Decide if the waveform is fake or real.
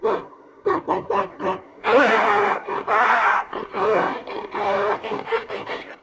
fake